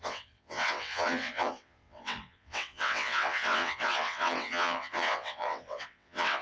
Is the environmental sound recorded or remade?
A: remade